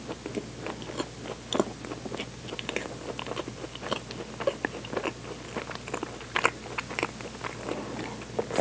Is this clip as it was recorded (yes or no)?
yes